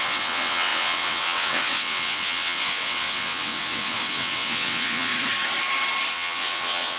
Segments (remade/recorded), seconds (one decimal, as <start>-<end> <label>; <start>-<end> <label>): 0.0-5.1 remade; 5.1-6.1 recorded; 6.1-7.0 remade